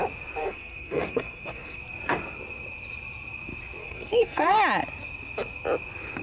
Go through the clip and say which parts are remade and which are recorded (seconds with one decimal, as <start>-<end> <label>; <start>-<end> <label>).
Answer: 0.0-0.4 recorded; 0.4-1.8 remade; 1.8-3.8 recorded; 3.8-4.6 remade; 4.6-6.2 recorded